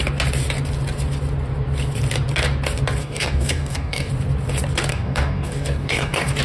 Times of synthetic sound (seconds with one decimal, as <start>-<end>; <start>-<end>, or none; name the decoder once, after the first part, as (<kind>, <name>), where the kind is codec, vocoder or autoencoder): 3.0-4.1 (codec, DAC); 4.9-6.4